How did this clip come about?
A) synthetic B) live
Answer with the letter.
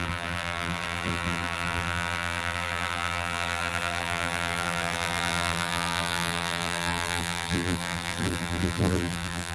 A